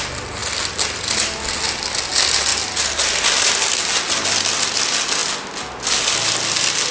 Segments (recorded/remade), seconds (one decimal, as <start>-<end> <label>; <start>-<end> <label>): 0.0-6.9 recorded